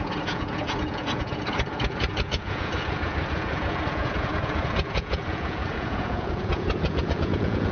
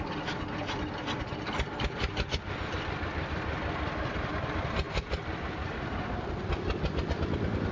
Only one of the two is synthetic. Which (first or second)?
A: first